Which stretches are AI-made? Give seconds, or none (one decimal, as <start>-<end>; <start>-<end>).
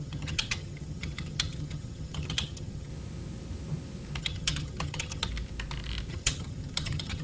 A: 0.0-2.9; 4.2-5.3; 6.1-7.2